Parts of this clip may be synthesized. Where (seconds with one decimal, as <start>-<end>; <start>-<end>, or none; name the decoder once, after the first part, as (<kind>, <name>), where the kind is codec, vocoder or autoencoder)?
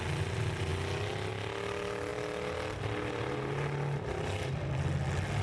none